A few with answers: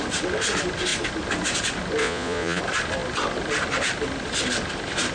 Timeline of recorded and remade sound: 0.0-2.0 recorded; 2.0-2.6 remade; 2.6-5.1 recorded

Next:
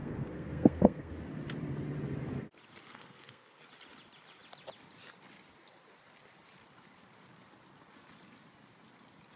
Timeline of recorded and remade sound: 0.0-1.1 remade; 1.1-2.9 recorded; 2.9-3.6 remade; 3.6-9.4 recorded

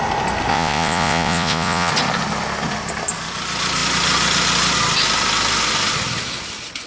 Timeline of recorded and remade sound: 0.0-0.5 recorded; 0.5-1.9 remade; 1.9-6.9 recorded

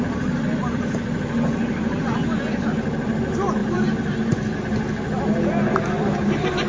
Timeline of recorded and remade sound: 0.0-3.6 recorded; 3.6-4.6 remade; 4.6-6.7 recorded

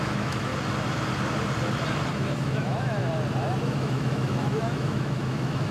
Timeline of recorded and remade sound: 0.0-0.5 remade; 0.5-2.1 recorded; 2.1-3.0 remade; 3.0-3.8 recorded; 3.8-5.7 remade

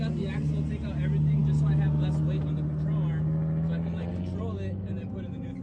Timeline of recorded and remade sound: 0.0-5.6 recorded